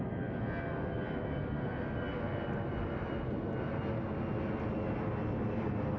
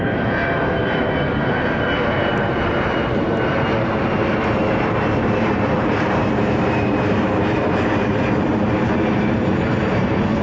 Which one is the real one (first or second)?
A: first